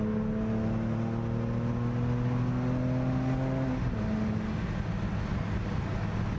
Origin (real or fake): real